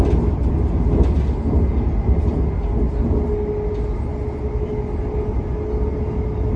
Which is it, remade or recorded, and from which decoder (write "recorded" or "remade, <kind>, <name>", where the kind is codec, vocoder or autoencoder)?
recorded